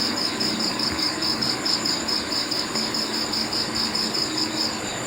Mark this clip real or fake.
fake